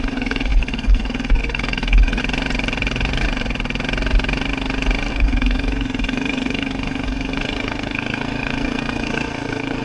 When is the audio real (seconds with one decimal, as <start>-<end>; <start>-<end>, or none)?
2.2-5.1